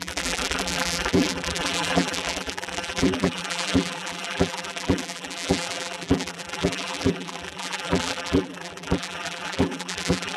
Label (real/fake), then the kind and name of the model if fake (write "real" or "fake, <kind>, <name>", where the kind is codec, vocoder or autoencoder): fake, vocoder, BigVGAN v2